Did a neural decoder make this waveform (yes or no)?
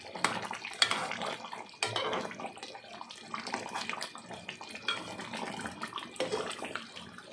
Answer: no